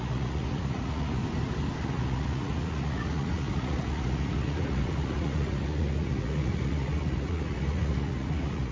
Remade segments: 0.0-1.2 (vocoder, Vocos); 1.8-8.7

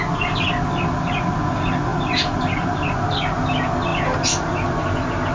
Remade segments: none

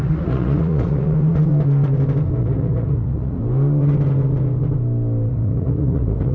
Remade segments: 0.0-1.5 (vocoder, Vocos); 2.4-3.4; 5.3-6.3

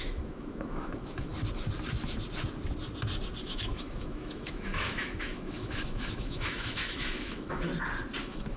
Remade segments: 0.0-1.3 (autoencoder, DAC-VAE); 3.4-7.7; 8.2-8.6

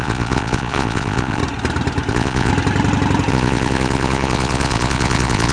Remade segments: 0.0-1.4 (vocoder, Vocos); 2.1-2.5; 3.3-5.5

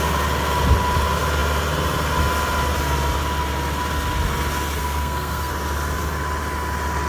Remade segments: 4.8-5.5 (codec, SNAC)

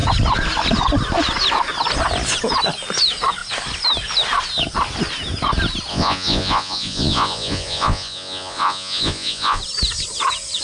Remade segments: 5.9-9.6 (vocoder, Vocos)